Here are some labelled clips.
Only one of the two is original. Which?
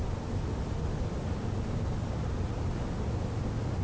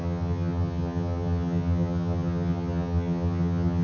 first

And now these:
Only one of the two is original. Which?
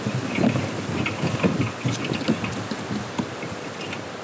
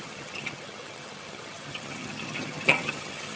first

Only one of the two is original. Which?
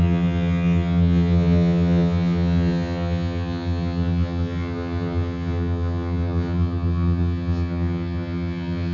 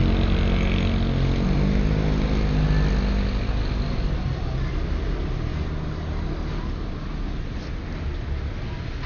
second